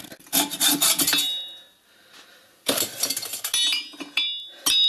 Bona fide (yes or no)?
yes